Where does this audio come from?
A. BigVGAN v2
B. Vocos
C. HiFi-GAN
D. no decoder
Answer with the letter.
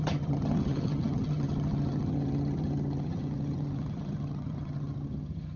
C